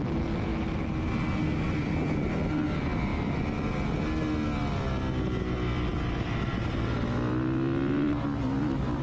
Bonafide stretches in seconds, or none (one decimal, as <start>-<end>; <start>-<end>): 0.0-9.0